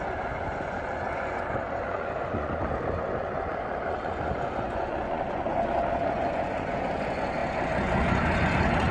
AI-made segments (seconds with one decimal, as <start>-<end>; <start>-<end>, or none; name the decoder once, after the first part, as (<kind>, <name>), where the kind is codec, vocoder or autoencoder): 0.0-2.6 (vocoder, Vocos); 3.2-8.9